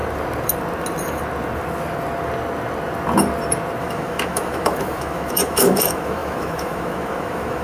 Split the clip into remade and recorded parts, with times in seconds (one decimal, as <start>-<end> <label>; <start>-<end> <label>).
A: 0.0-3.8 recorded; 3.8-7.6 remade